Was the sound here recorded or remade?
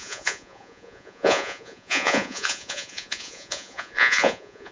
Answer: remade